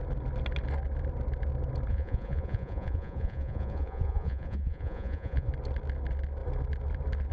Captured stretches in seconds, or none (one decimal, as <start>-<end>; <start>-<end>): 0.0-1.9; 5.5-7.3